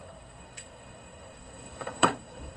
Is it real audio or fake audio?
fake